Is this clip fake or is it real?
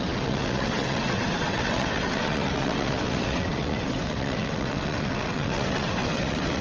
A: fake